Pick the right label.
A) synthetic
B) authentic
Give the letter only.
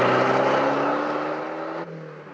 B